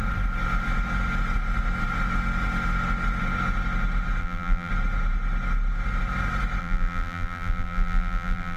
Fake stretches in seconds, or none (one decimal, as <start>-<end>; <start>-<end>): 4.2-4.7; 6.6-8.6